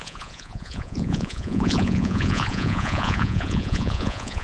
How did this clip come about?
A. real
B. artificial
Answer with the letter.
B